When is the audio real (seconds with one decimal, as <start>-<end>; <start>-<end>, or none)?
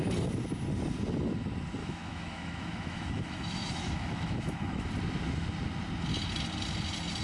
0.0-1.8; 4.9-7.2